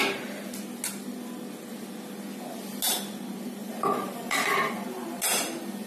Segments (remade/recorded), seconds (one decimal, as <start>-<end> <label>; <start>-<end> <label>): 0.0-3.6 recorded; 3.6-4.4 remade; 4.4-5.9 recorded